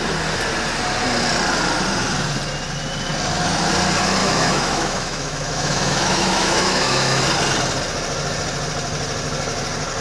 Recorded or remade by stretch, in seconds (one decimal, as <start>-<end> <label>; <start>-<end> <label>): 0.0-4.2 recorded; 4.2-7.2 remade; 7.2-10.0 recorded